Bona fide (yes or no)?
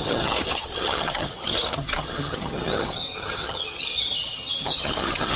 no